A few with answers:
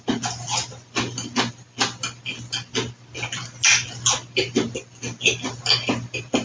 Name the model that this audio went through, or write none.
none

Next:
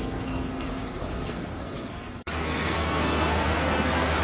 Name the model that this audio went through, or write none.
codec, SNAC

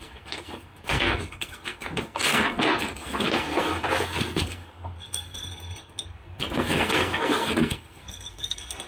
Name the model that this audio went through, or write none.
codec, SNAC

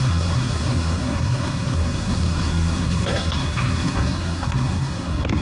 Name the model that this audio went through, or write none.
codec, SNAC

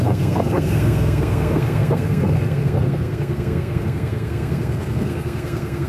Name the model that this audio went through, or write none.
codec, SNAC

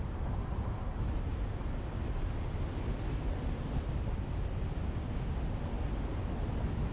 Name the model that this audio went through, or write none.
none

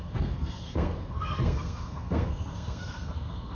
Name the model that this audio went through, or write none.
codec, SNAC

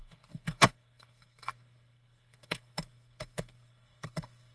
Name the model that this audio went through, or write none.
codec, SNAC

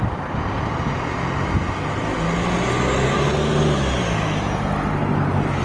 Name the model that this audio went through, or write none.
none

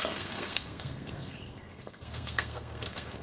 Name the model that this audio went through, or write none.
codec, SNAC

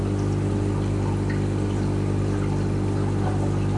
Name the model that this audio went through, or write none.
none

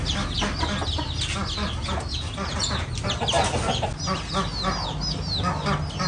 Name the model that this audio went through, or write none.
none